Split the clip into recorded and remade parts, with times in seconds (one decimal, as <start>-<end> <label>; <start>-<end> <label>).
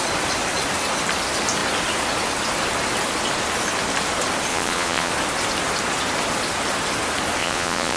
0.0-4.5 recorded; 4.5-5.1 remade; 5.1-7.4 recorded; 7.4-8.0 remade